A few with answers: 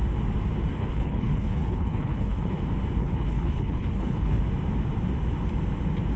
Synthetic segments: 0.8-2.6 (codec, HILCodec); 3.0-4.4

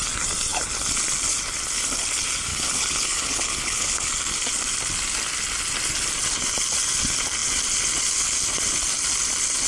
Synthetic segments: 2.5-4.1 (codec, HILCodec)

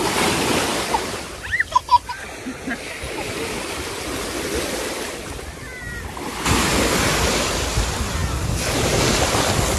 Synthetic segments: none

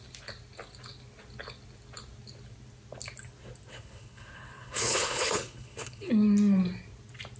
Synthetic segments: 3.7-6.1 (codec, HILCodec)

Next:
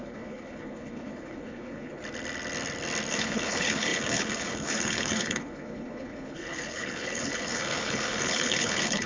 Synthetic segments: 0.0-2.0 (codec, HILCodec); 3.1-9.1

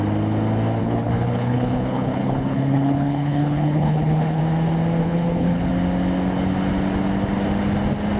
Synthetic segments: 0.8-4.4 (codec, HILCodec); 5.0-5.7